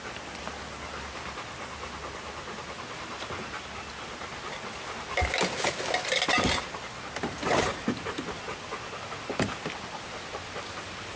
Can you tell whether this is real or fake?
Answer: real